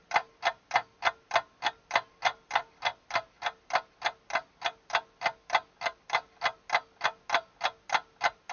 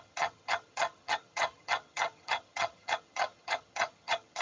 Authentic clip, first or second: first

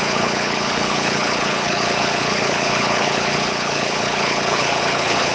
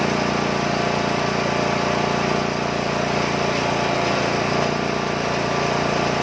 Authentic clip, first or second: second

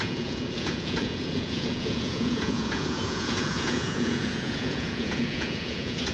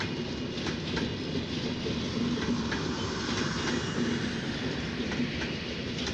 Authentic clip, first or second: second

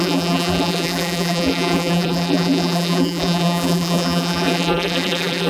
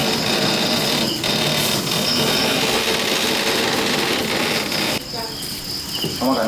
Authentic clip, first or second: second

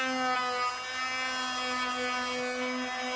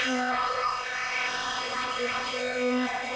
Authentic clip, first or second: first